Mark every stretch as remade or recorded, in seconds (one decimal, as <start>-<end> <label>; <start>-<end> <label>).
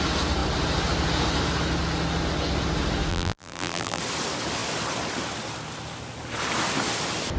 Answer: 0.0-3.1 recorded; 3.1-4.0 remade; 4.0-7.4 recorded